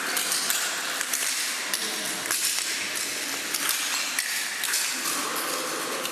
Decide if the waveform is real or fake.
real